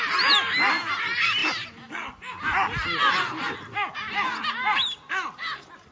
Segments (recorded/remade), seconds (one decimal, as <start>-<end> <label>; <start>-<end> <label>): 0.0-5.9 recorded

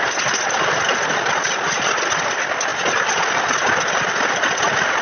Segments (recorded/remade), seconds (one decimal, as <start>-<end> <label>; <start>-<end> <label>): 0.0-5.0 recorded

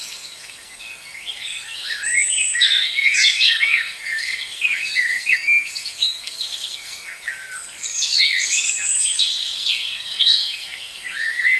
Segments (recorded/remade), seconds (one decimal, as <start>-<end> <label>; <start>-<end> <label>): 0.0-11.6 remade

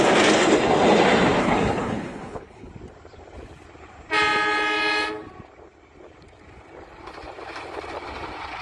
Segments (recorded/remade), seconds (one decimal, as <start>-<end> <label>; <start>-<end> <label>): 0.0-1.4 recorded; 1.4-2.7 remade; 2.7-8.6 recorded